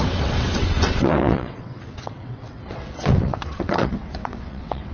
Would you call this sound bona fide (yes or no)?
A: no